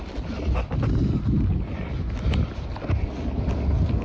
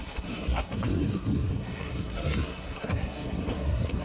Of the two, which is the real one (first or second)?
first